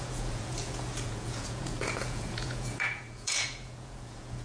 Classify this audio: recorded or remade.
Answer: remade